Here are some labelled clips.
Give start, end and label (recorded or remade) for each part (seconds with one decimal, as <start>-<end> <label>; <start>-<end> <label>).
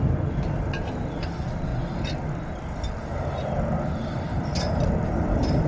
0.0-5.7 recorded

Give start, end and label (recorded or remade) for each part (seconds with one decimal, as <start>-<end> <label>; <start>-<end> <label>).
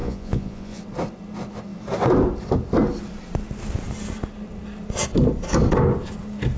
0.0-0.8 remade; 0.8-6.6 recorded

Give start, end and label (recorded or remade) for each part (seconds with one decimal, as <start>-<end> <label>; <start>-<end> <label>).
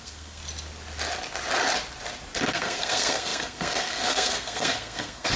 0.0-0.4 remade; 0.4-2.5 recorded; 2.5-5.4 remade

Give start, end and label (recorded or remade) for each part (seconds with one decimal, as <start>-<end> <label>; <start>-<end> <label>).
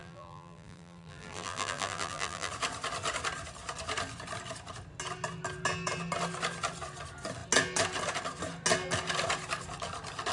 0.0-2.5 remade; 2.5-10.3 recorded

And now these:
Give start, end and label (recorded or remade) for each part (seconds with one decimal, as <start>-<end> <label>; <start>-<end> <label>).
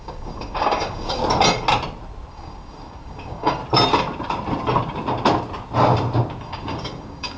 0.0-1.2 remade; 1.2-2.3 recorded; 2.3-3.6 remade; 3.6-6.4 recorded; 6.4-7.4 remade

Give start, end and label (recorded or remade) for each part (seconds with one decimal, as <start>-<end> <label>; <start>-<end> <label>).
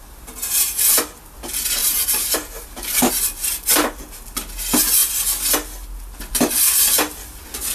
0.0-1.8 recorded; 1.8-3.1 remade; 3.1-7.7 recorded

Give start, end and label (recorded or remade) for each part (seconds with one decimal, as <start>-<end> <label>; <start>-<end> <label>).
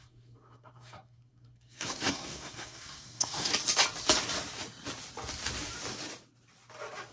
0.0-3.5 remade; 3.5-7.1 recorded